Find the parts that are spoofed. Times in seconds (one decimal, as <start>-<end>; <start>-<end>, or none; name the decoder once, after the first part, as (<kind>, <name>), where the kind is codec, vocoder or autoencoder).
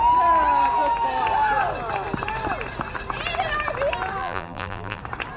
4.2-5.0 (vocoder, BigVGAN v2)